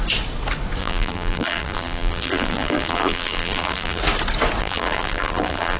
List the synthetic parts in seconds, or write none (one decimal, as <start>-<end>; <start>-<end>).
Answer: 0.8-4.0; 4.6-5.8